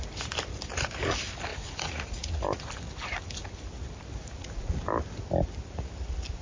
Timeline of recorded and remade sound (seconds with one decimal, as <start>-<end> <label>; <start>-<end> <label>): 0.0-1.5 recorded; 1.5-2.6 remade; 2.6-4.2 recorded; 4.2-4.8 remade; 4.8-6.4 recorded